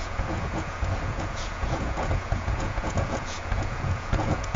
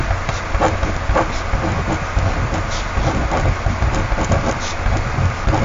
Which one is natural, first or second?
second